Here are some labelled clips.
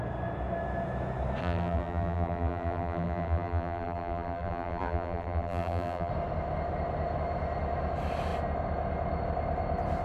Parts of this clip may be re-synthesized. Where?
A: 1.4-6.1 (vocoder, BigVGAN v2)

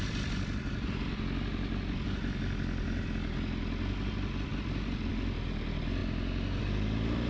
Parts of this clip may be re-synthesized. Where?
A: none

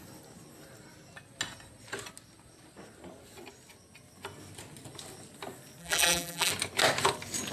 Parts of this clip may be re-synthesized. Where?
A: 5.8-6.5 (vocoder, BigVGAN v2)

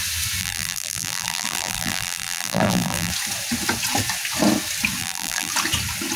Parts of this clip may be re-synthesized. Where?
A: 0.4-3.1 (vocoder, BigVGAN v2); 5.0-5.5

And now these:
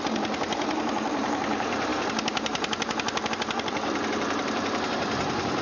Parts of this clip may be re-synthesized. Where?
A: 0.0-5.6 (vocoder, BigVGAN v2)

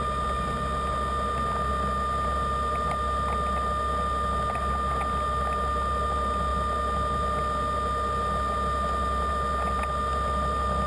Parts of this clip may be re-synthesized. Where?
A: none

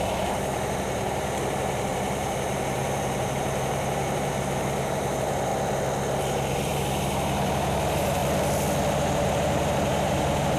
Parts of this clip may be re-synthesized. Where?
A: 0.0-5.5 (vocoder, BigVGAN v2); 6.5-8.2; 8.9-10.6